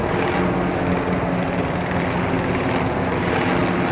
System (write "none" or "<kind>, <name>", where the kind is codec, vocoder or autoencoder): none